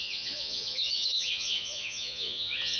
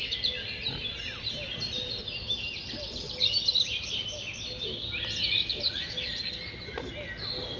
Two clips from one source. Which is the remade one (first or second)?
first